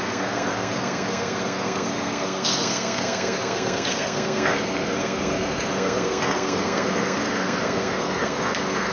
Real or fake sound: fake